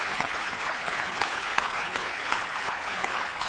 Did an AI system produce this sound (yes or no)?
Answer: yes